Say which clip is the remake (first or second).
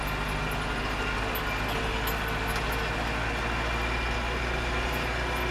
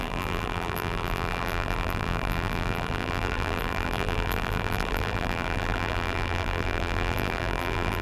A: second